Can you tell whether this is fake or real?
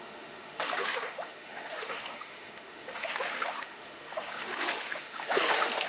fake